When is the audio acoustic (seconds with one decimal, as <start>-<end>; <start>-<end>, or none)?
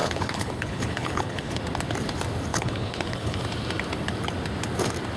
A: 1.6-2.5; 3.4-5.2